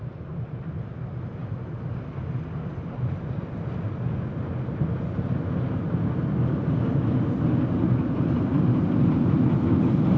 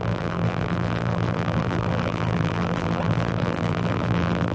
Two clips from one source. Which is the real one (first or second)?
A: first